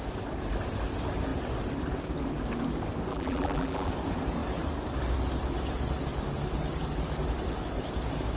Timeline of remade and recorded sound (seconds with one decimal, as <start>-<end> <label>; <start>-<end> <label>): 0.0-3.1 recorded; 3.1-3.9 remade; 3.9-8.4 recorded